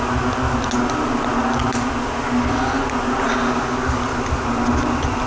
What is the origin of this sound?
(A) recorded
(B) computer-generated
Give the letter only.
A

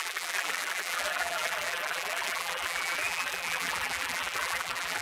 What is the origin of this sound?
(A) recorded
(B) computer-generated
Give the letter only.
B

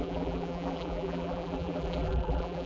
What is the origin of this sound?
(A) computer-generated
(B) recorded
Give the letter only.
A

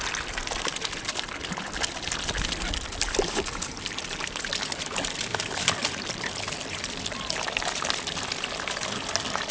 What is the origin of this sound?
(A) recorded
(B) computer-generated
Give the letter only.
A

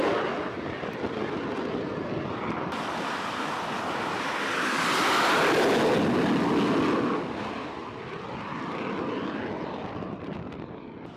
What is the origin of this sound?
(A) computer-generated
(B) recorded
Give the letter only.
B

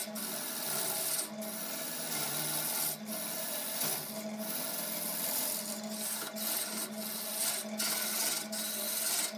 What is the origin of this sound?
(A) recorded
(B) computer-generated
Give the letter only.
A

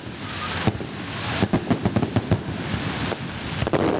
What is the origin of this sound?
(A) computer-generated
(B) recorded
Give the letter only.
A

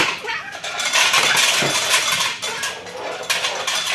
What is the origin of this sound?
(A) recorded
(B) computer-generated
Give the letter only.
A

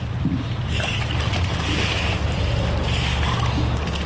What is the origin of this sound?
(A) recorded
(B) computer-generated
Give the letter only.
A